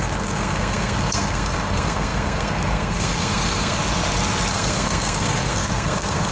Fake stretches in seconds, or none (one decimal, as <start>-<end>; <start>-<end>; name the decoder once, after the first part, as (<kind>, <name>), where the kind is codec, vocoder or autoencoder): 0.0-3.8 (codec, SNAC); 4.5-6.3

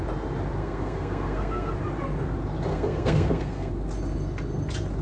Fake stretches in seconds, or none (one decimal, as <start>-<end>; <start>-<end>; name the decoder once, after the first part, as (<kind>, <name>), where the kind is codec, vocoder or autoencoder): 0.6-1.7 (codec, SNAC); 2.7-3.7